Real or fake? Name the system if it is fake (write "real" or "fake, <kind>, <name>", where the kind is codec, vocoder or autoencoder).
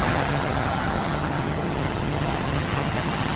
fake, vocoder, HiFi-GAN